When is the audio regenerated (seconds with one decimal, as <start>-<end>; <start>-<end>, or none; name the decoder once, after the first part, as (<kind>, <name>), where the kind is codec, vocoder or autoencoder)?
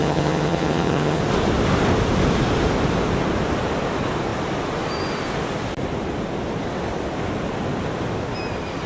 0.0-1.2 (vocoder, HiFi-GAN)